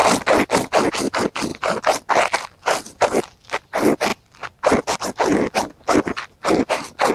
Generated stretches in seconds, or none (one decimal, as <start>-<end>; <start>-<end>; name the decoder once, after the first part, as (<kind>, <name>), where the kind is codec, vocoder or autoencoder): 1.5-3.1 (vocoder, BigVGAN v2)